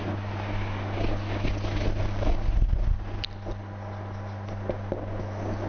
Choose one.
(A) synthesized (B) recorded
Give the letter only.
B